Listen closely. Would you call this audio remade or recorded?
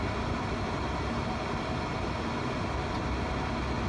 recorded